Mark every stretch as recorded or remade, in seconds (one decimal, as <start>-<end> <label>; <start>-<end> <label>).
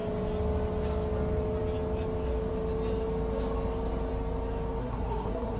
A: 0.0-4.8 recorded; 4.8-5.6 remade